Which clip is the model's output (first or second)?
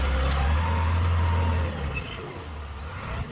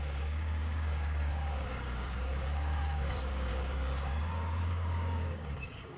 second